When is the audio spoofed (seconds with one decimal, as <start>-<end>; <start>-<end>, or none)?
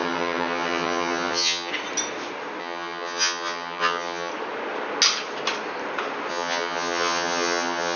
0.0-1.7; 2.6-4.3; 6.3-8.0